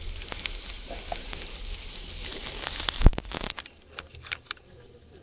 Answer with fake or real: real